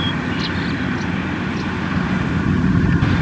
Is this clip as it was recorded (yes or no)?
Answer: yes